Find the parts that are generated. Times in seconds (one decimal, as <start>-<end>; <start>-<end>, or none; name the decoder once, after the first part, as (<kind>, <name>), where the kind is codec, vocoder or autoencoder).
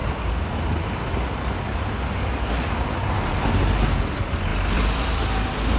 4.5-5.8 (vocoder, BigVGAN v2)